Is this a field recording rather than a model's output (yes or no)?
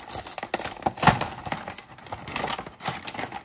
yes